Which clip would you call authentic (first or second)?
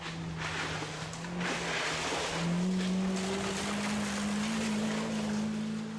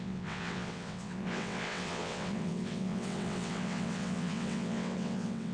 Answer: first